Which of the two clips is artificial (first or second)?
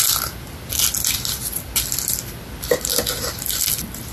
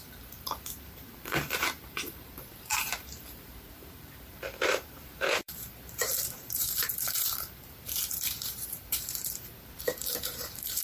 second